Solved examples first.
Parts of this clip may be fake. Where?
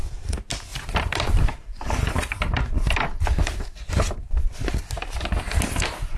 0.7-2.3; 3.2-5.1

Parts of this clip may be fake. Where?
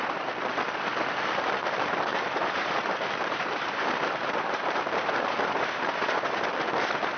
2.1-6.4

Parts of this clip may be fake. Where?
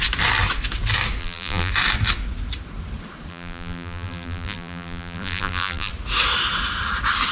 1.2-1.7; 3.3-5.9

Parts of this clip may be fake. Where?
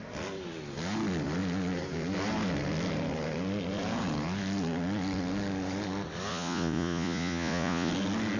6.3-7.9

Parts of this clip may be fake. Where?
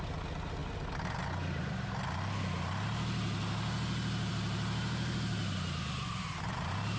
none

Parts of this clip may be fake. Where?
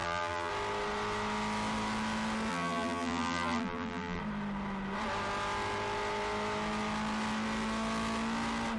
0.0-0.5; 2.5-4.2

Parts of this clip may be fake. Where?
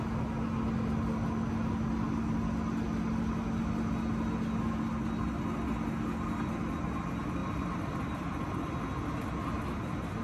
7.4-8.0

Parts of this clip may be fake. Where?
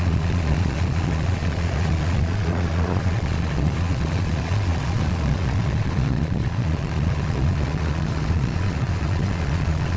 0.0-10.0